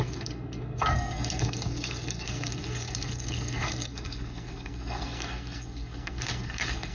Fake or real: fake